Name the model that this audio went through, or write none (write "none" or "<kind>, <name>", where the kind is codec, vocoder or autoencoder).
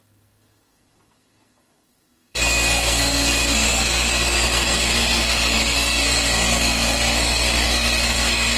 codec, SNAC